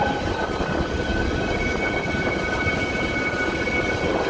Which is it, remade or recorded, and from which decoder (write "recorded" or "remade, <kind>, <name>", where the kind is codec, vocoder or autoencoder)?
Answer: recorded